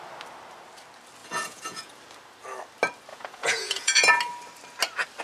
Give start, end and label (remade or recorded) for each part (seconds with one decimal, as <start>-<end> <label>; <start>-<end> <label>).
0.0-1.2 recorded; 1.2-1.9 remade; 1.9-3.1 recorded; 3.1-4.1 remade; 4.1-5.2 recorded